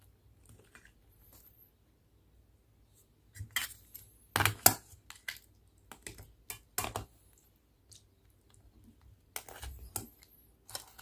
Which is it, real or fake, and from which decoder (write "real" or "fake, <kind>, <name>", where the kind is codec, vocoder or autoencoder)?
real